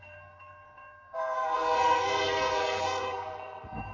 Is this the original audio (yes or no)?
no